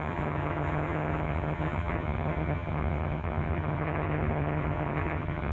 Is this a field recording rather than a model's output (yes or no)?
no